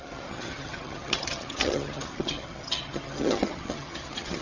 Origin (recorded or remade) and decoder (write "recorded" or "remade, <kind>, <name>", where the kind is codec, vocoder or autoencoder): remade, vocoder, HiFi-GAN